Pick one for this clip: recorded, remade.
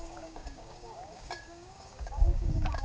remade